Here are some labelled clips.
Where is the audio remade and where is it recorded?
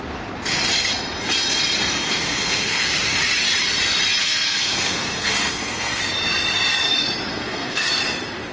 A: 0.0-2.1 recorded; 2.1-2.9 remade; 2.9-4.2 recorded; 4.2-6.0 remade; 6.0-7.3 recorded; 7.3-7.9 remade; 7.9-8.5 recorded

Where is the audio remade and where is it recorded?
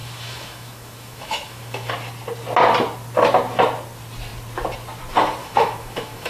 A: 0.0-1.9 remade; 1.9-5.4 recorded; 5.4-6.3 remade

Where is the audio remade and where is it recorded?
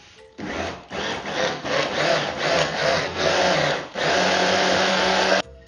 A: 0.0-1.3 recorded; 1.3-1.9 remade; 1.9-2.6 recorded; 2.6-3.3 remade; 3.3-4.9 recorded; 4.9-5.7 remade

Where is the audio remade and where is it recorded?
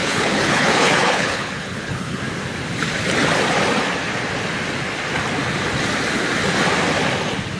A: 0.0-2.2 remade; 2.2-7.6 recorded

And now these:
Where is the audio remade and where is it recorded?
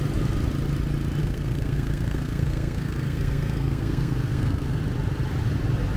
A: 0.0-1.2 recorded; 1.2-4.8 remade; 4.8-6.0 recorded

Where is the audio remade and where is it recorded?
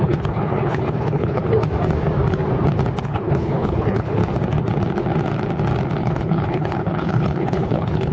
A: 0.0-1.4 remade; 1.4-3.0 recorded; 3.0-4.2 remade; 4.2-6.0 recorded; 6.0-8.1 remade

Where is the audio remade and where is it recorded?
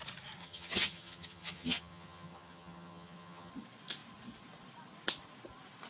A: 0.0-0.4 recorded; 0.4-3.5 remade; 3.5-5.9 recorded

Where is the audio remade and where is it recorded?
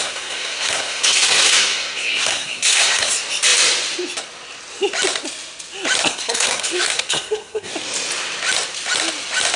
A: 0.0-3.1 remade; 3.1-6.1 recorded; 6.1-7.7 remade; 7.7-9.6 recorded